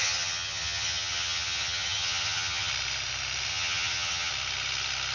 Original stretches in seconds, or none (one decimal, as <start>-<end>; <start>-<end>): 2.7-3.5; 4.3-5.1